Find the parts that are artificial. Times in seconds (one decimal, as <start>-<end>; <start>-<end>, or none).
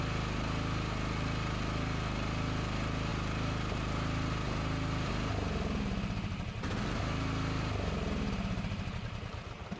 3.1-5.1